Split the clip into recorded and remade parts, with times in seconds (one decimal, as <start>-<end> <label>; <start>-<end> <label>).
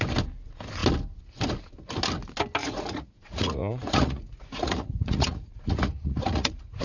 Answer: 0.0-2.6 recorded; 2.6-6.8 remade